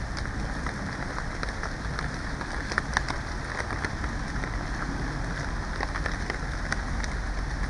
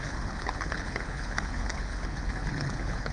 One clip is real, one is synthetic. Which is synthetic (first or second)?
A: second